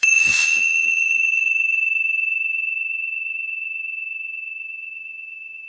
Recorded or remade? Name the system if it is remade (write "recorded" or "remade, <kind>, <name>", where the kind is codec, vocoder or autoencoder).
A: remade, autoencoder, DAC-VAE